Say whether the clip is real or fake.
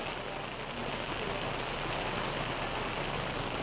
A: real